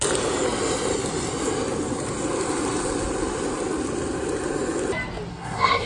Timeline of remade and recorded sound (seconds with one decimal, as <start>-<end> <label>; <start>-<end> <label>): 0.0-5.3 recorded; 5.3-5.9 remade